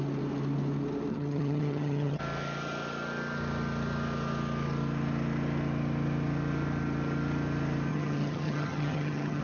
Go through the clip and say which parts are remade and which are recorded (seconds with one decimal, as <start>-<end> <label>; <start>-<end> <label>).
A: 0.0-1.1 recorded; 1.1-2.2 remade; 2.2-7.9 recorded; 7.9-9.4 remade